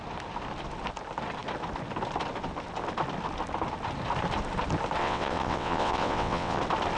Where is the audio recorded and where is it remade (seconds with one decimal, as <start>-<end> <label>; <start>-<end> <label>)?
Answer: 0.0-5.0 recorded; 5.0-6.6 remade; 6.6-7.0 recorded